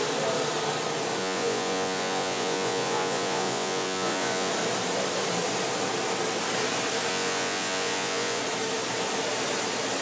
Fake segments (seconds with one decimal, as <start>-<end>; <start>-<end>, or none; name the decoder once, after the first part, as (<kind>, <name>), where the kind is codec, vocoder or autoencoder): 1.2-4.5 (vocoder, Vocos); 7.1-8.4

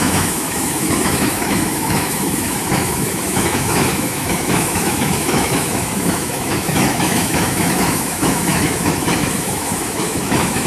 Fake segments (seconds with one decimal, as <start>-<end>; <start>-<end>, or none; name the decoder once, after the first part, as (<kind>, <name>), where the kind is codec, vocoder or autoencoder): 0.0-10.7 (autoencoder, DAC-VAE)

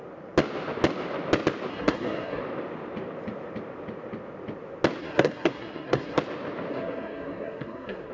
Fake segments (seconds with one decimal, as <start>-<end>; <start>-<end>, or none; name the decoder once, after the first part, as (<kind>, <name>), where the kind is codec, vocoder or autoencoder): 1.7-2.4 (codec, SNAC); 5.0-6.2; 6.7-8.1

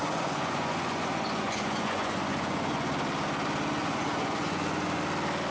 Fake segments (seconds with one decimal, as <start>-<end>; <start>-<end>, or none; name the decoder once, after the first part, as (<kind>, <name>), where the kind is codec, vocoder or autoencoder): 0.0-2.9 (vocoder, Vocos); 3.8-5.0

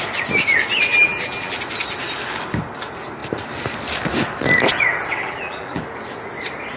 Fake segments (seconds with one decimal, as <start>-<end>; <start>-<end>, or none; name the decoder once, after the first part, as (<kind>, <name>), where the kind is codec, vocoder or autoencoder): 0.9-1.6 (vocoder, BigVGAN v2); 5.2-5.8

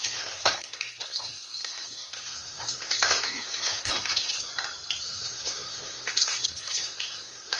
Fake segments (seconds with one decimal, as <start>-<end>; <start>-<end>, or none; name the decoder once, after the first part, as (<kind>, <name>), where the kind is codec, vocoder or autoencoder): 0.0-4.5 (codec, SNAC); 5.0-7.6

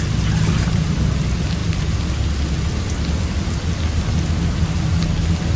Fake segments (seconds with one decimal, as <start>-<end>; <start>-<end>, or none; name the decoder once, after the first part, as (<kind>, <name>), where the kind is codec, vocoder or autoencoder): none